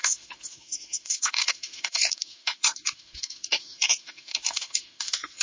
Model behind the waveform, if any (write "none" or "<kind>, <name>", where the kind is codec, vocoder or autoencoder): autoencoder, DAC-VAE